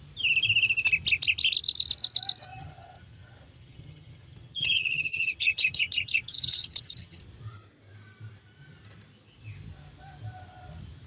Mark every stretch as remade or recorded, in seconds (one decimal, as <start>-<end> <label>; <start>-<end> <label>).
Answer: 0.0-2.5 recorded; 2.5-7.2 remade; 7.2-11.1 recorded